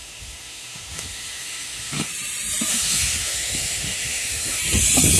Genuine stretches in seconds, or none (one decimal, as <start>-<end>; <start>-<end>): 2.1-2.7; 4.6-5.2